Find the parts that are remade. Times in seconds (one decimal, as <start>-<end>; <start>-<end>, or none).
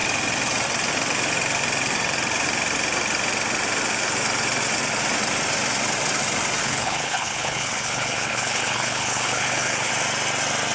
6.6-9.9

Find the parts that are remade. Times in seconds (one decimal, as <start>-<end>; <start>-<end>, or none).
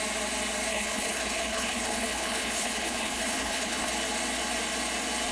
0.7-3.9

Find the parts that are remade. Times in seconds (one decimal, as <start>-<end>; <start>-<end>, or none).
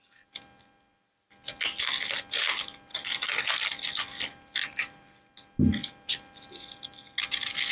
none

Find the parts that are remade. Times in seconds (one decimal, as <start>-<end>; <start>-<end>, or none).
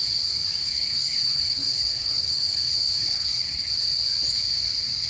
0.6-3.7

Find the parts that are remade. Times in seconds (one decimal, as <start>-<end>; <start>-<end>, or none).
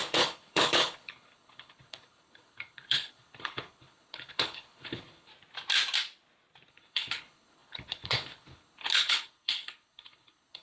0.0-5.3; 6.7-10.6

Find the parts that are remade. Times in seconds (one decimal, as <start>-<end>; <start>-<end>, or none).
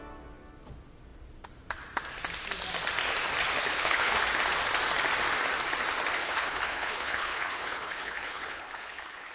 3.6-4.2; 6.2-9.3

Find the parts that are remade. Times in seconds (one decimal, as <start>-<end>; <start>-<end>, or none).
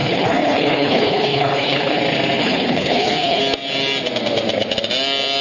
0.0-2.0; 2.4-3.4